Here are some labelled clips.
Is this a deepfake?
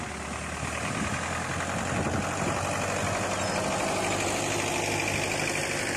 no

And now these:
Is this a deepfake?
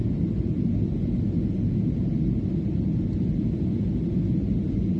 no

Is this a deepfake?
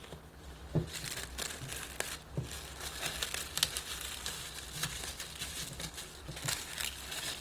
no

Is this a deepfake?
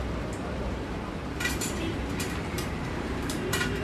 yes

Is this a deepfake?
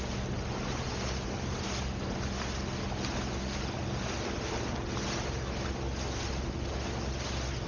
no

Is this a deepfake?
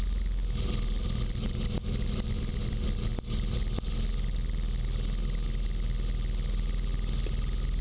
no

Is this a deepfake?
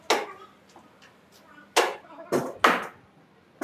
no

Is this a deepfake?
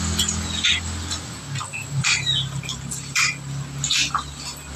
no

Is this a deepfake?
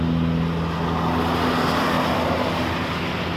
no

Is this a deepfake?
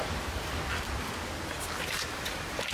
no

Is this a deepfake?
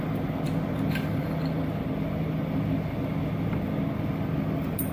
no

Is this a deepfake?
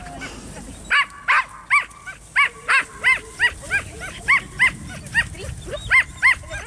no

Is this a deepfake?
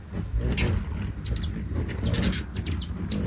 no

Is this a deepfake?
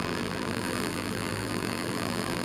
yes